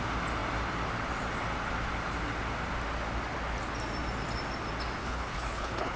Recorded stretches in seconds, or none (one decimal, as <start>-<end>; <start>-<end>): 0.0-5.0